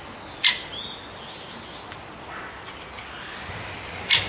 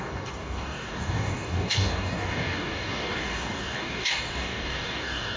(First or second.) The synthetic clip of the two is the second